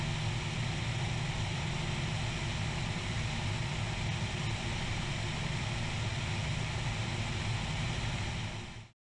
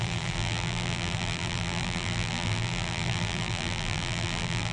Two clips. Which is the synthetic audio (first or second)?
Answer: second